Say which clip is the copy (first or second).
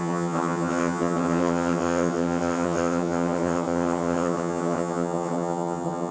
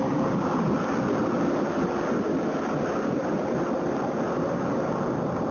first